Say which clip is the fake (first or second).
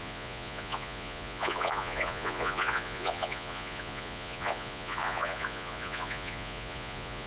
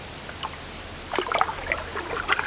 first